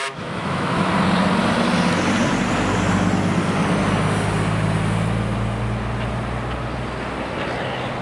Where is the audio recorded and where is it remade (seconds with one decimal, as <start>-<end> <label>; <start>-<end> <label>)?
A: 0.0-0.9 remade; 0.9-8.0 recorded